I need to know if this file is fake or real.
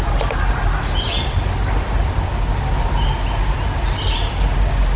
real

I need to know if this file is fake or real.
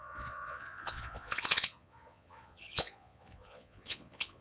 fake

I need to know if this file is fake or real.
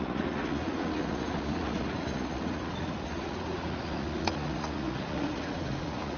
fake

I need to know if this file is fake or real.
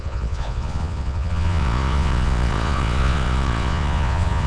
fake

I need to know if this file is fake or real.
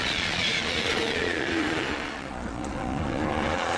fake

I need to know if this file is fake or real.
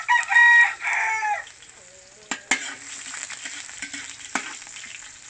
real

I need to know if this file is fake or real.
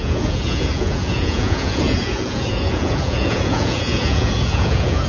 fake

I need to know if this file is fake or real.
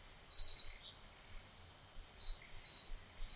real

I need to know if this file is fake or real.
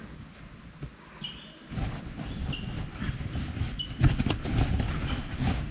real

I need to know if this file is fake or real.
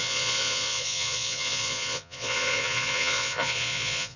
fake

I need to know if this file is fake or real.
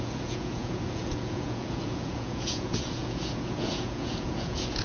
fake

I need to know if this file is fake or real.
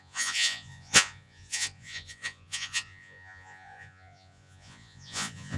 fake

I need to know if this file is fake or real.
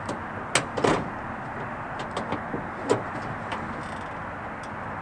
real